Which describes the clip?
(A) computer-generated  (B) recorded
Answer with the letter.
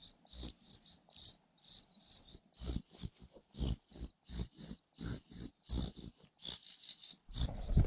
B